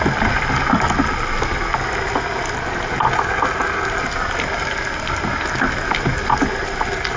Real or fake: real